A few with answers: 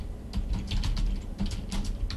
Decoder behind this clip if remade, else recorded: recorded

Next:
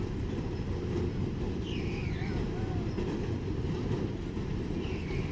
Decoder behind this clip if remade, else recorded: recorded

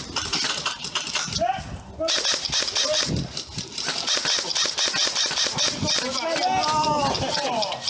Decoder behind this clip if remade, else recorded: recorded